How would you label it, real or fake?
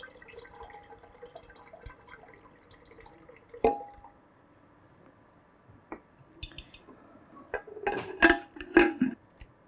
real